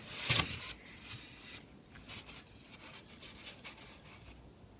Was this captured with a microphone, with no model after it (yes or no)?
yes